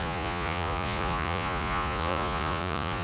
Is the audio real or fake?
fake